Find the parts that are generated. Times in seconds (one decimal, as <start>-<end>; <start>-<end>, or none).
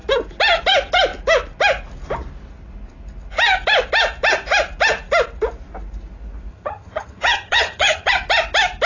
6.5-8.1